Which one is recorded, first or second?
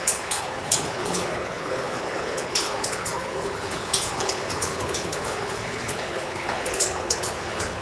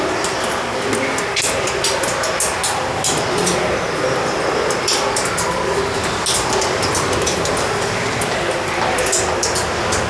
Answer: second